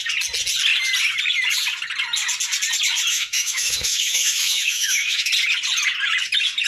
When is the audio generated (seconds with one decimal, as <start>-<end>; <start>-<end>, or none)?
3.1-5.3